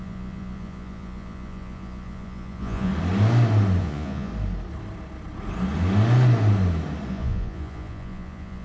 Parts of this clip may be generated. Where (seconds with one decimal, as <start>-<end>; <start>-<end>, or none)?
0.0-2.9; 3.8-4.3; 7.1-8.6